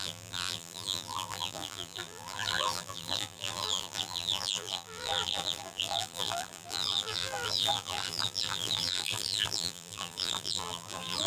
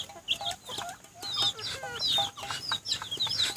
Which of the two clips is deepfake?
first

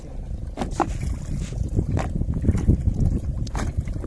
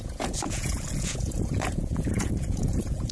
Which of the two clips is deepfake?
second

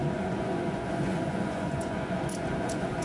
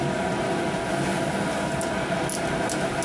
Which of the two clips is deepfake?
first